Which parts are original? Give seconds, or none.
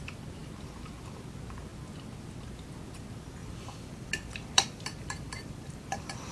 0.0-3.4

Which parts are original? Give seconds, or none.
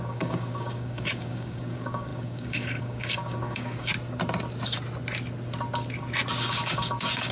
3.9-6.4